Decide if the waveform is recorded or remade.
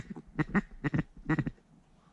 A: recorded